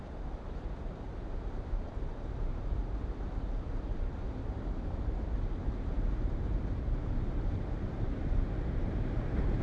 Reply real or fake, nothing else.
fake